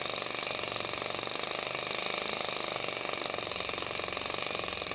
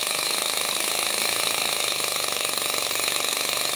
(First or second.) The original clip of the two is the first